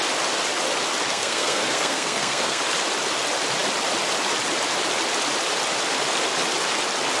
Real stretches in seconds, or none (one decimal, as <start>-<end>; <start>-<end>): 0.0-1.1; 2.6-7.2